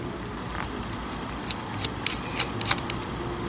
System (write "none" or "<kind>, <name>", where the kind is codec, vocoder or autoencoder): none